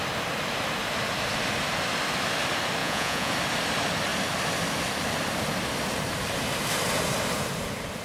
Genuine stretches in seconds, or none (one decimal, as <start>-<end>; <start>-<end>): 0.0-2.8; 3.3-8.0